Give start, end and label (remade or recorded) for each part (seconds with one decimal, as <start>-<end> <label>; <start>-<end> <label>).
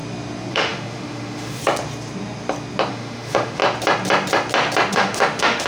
0.0-0.5 recorded; 0.5-1.6 remade; 1.6-2.9 recorded; 2.9-3.6 remade; 3.6-4.9 recorded; 4.9-5.7 remade